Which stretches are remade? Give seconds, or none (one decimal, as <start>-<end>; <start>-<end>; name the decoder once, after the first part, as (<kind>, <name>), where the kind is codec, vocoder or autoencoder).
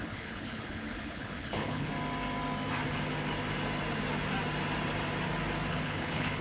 0.0-1.9 (codec, HILCodec); 5.7-6.4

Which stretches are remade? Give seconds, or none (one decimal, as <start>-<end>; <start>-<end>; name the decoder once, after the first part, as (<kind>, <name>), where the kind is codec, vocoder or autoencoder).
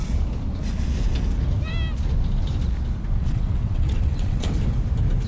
3.2-4.5 (vocoder, WaveNeXt)